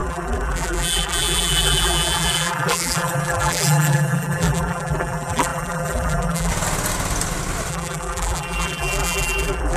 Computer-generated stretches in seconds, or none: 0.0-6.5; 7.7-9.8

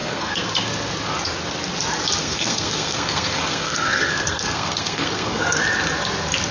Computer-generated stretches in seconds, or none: 0.0-0.5; 2.2-5.6